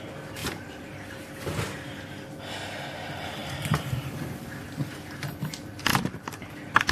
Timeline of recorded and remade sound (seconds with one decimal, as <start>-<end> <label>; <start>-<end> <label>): 0.0-0.4 recorded; 0.4-0.9 remade; 0.9-3.4 recorded; 3.4-4.1 remade; 4.1-5.9 recorded; 5.9-6.5 remade; 6.5-6.9 recorded